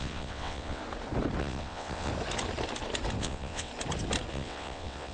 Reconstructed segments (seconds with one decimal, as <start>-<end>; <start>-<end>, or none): 0.0-0.8; 1.4-2.1; 3.2-3.7; 4.3-5.1